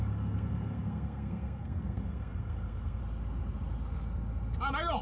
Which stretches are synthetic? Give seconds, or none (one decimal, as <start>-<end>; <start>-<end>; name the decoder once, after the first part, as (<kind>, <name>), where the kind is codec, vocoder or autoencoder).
0.0-3.0 (codec, SNAC)

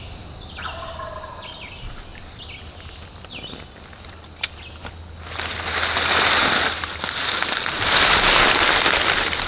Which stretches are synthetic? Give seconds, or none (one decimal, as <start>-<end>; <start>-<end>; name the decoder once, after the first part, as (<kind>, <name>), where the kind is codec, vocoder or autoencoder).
none

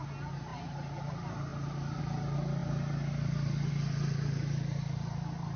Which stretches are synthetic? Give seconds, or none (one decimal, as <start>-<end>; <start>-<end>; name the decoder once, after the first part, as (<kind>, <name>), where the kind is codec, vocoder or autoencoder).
none

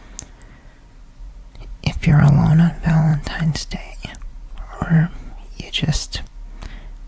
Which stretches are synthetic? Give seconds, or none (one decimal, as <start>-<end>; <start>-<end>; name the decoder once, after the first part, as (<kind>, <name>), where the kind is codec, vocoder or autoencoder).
1.2-2.7 (vocoder, BigVGAN v2); 3.1-5.7

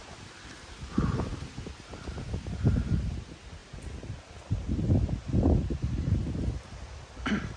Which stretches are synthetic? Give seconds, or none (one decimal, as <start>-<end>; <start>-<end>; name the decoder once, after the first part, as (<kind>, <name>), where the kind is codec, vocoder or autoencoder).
none

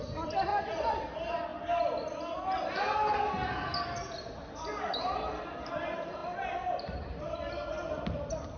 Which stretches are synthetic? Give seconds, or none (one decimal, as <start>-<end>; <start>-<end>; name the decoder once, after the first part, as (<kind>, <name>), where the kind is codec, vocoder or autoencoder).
0.5-1.0 (vocoder, BigVGAN v2); 6.2-7.5

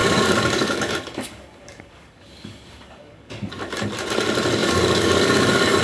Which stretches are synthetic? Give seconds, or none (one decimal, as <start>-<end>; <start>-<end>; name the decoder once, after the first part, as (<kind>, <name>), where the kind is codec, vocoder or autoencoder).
0.0-3.5 (codec, DAC); 4.6-5.8